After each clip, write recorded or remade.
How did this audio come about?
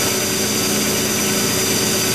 recorded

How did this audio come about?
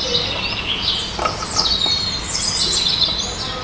recorded